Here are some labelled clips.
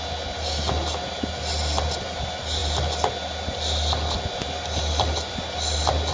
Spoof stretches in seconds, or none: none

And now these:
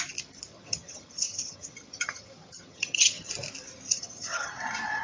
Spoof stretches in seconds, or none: 0.5-3.3 (vocoder, HiFi-GAN); 3.9-4.5

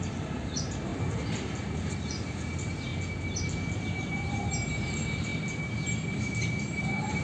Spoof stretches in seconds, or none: 0.0-0.9 (vocoder, BigVGAN v2); 1.7-2.9; 3.9-5.3; 6.6-7.2

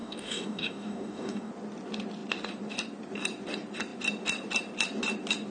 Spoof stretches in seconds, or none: 0.0-1.5 (codec, DAC)

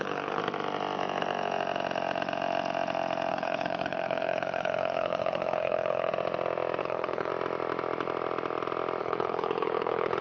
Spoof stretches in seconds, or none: 0.0-0.4 (codec, HILCodec); 3.3-6.1; 6.8-7.3; 9.0-10.2